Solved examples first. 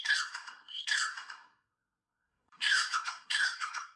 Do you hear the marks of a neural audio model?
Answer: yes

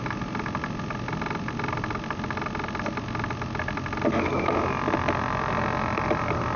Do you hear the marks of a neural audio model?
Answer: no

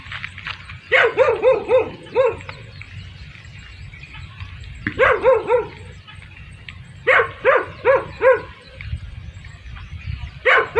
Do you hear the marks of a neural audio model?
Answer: yes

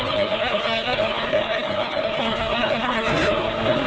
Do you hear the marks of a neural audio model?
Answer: yes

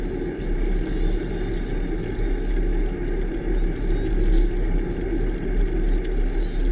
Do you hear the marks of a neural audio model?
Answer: no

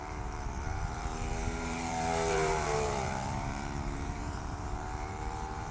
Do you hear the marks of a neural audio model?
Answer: yes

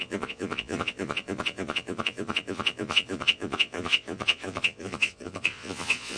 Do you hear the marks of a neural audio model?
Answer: yes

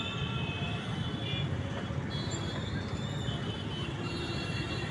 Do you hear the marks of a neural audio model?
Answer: no